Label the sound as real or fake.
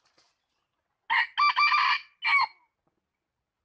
real